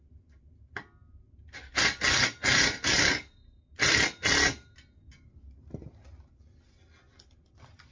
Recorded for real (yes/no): yes